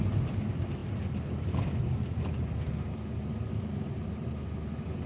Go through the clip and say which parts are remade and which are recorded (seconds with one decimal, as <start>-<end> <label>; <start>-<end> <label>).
0.0-5.1 recorded

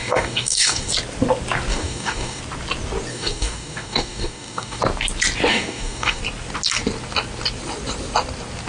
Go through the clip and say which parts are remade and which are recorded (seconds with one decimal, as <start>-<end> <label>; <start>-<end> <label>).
0.0-0.9 remade; 0.9-1.7 recorded; 1.7-2.4 remade; 2.4-3.1 recorded; 3.1-4.8 remade; 4.8-5.5 recorded; 5.5-6.2 remade; 6.2-8.7 recorded

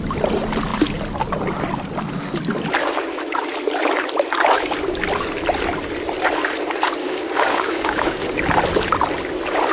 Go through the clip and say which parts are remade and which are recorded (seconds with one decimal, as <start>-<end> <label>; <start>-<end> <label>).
0.0-7.0 recorded; 7.0-8.4 remade; 8.4-9.7 recorded